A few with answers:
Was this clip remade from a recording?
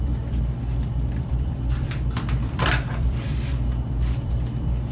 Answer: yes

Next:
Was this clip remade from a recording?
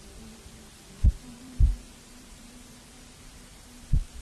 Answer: yes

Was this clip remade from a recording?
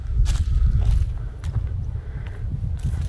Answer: no